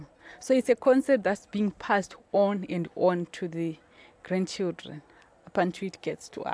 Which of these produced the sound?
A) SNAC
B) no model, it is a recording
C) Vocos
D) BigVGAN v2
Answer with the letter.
B